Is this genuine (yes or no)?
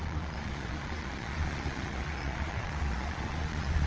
no